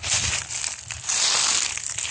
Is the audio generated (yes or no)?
no